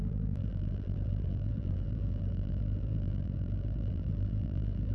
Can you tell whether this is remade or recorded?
remade